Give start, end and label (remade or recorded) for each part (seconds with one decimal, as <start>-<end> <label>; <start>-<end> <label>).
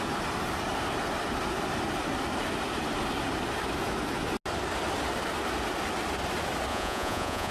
0.0-6.7 recorded; 6.7-7.5 remade